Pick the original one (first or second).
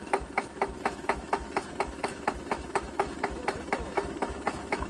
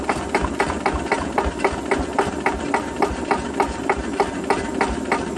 second